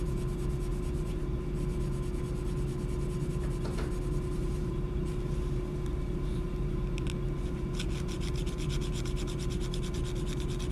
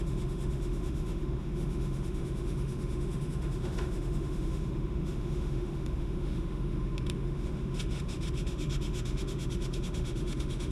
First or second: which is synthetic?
second